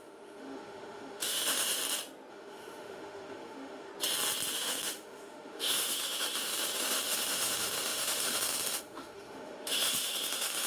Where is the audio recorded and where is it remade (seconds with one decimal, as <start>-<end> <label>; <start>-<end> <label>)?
0.0-1.8 remade; 1.8-2.3 recorded; 2.3-3.9 remade; 3.9-4.5 recorded; 4.5-10.7 remade